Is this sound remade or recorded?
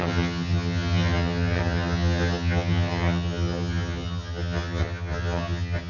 remade